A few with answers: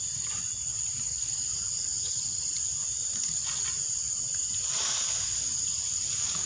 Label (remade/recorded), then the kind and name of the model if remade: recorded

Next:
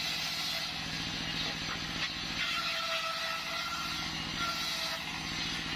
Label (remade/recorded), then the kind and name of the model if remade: recorded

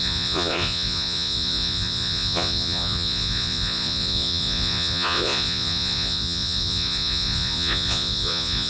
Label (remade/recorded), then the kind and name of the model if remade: remade, vocoder, Vocos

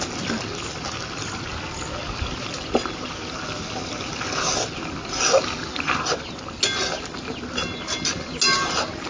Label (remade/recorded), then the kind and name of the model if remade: recorded